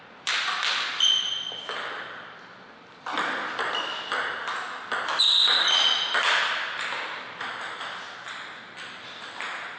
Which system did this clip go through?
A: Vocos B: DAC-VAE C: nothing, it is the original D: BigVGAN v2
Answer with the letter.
C